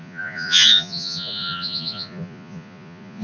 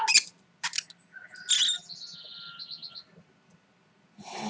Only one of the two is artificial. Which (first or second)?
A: first